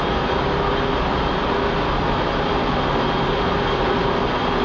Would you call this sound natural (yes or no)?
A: yes